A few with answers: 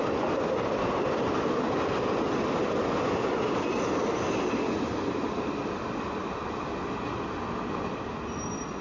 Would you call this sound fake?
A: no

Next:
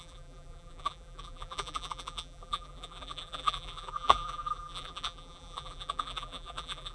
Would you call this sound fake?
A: yes